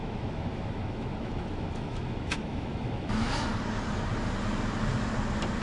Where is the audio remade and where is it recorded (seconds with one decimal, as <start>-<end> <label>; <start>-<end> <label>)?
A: 0.0-3.4 remade; 3.4-5.6 recorded